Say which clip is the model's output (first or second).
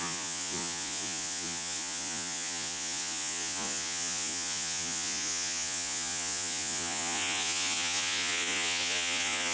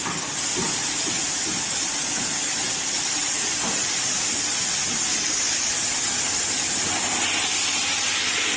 first